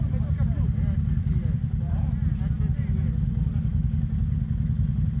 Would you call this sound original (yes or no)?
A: yes